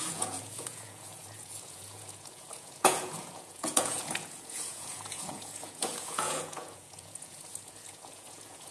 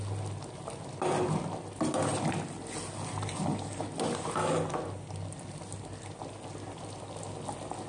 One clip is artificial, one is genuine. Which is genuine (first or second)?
second